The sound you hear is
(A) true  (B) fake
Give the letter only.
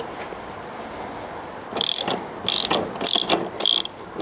A